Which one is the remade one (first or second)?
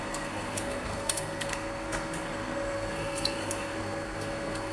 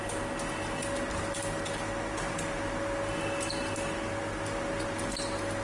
first